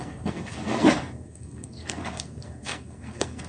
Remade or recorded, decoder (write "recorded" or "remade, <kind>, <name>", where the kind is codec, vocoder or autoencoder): remade, codec, SNAC